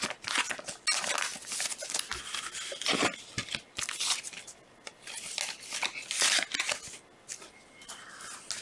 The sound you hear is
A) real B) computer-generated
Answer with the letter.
A